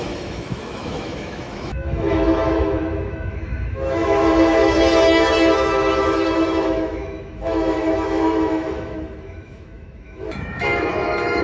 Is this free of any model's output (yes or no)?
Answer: no